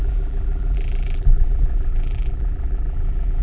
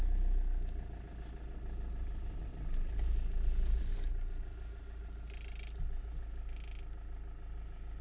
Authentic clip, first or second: second